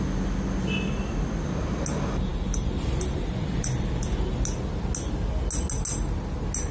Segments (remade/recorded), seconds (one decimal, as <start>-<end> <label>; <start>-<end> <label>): 0.0-2.3 recorded; 2.3-4.1 remade; 4.1-6.7 recorded